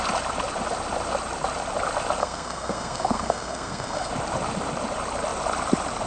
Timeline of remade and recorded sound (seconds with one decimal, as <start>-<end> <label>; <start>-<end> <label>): 0.0-2.2 recorded; 2.2-4.1 remade; 4.1-6.1 recorded